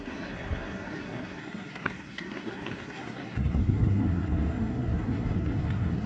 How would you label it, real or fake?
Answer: fake